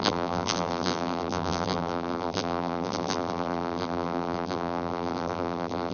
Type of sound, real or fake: fake